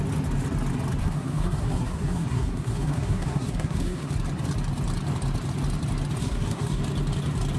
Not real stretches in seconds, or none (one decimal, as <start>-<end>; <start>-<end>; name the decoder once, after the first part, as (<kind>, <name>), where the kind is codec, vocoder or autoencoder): 1.0-4.1 (codec, SNAC); 6.2-6.8